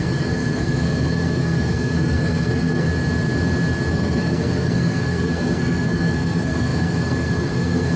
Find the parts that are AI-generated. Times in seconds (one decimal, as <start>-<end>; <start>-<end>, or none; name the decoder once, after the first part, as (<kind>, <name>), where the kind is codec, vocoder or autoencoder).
0.0-2.9 (codec, SNAC); 3.9-8.0